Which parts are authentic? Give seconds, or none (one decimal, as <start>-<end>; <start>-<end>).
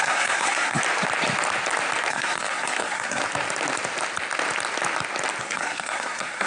0.8-2.1; 3.2-5.4